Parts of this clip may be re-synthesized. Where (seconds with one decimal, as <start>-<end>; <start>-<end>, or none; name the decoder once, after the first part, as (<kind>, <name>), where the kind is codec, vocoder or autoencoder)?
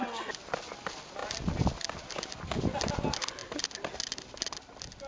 none